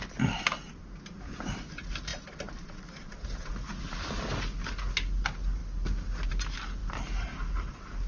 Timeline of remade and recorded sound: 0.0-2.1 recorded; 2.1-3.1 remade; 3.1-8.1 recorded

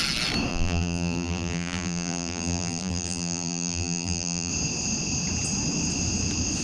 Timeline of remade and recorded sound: 0.0-0.5 recorded; 0.5-4.5 remade; 4.5-6.6 recorded

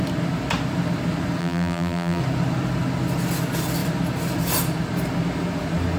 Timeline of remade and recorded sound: 0.0-1.4 recorded; 1.4-2.2 remade; 2.2-6.0 recorded

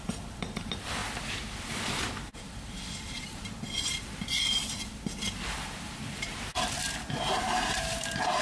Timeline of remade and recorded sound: 0.0-1.0 remade; 1.0-5.5 recorded; 5.5-6.5 remade; 6.5-7.1 recorded; 7.1-8.4 remade

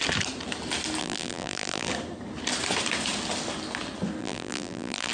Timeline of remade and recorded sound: 0.0-1.0 recorded; 1.0-1.9 remade; 1.9-4.2 recorded; 4.2-5.1 remade